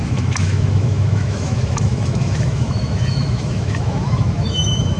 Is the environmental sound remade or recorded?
remade